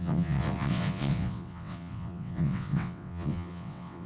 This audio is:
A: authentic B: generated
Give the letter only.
B